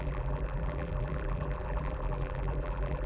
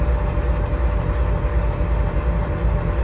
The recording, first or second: second